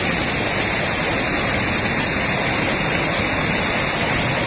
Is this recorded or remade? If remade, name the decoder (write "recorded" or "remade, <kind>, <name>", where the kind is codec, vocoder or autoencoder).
recorded